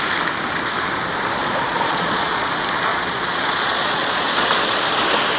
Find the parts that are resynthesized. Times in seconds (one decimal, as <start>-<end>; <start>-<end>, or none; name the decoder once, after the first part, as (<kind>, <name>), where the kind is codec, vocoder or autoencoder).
1.4-2.5 (vocoder, Vocos); 2.9-4.6